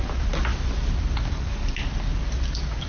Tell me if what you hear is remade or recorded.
recorded